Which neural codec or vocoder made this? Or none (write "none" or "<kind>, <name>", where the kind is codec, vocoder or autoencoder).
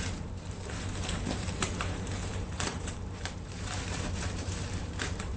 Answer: vocoder, BigVGAN v2